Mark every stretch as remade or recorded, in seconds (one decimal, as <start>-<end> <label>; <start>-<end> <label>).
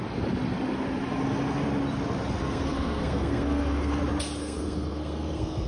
0.0-2.4 recorded; 2.4-4.0 remade; 4.0-4.4 recorded; 4.4-5.7 remade